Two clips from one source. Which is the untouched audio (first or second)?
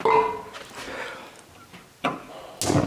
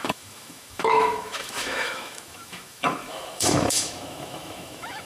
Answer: first